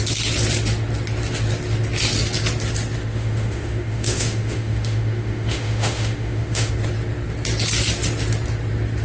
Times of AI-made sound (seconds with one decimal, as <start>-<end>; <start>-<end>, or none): 3.1-6.7